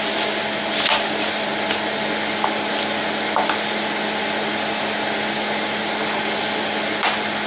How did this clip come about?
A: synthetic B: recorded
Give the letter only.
B